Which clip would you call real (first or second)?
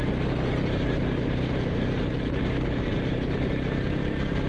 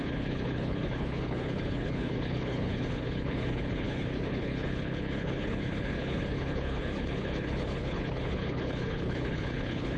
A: first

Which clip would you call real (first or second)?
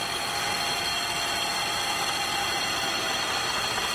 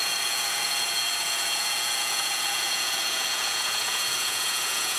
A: first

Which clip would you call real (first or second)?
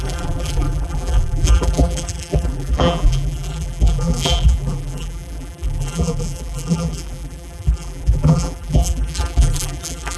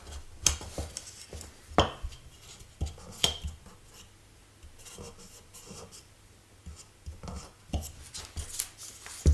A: second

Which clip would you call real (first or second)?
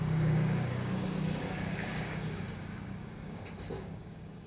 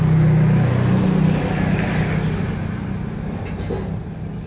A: second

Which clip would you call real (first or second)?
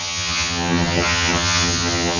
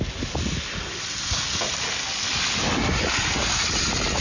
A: second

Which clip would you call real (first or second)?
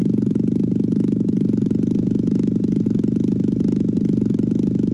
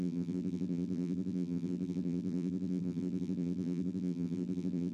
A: first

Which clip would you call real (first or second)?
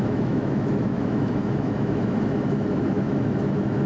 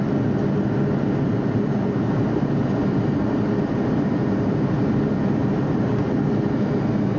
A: second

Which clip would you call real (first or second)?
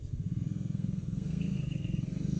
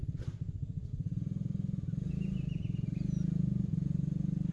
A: second